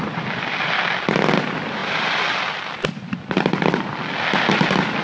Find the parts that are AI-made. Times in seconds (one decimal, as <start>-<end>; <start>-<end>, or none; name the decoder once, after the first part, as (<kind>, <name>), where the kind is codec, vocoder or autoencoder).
none